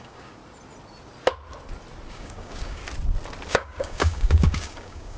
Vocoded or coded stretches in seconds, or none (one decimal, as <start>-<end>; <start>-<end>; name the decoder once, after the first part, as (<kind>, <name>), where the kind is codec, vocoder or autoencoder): 0.0-0.4 (codec, DAC); 2.1-2.8; 3.5-5.2